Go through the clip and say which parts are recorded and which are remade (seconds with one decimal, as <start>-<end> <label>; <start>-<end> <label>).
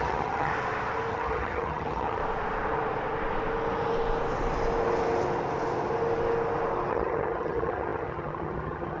0.0-0.5 remade; 0.5-1.1 recorded; 1.1-2.2 remade; 2.2-6.9 recorded; 6.9-9.0 remade